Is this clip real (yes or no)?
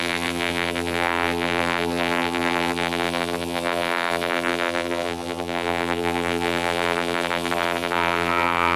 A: no